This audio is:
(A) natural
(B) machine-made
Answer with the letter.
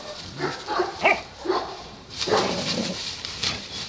B